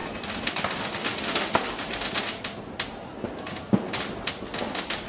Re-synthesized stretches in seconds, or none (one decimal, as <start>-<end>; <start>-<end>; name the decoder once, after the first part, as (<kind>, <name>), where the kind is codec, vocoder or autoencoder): none

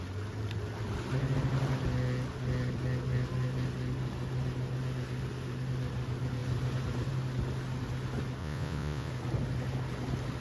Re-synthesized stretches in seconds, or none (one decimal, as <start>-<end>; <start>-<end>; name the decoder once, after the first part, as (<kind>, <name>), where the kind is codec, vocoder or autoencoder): 8.4-9.1 (vocoder, Vocos)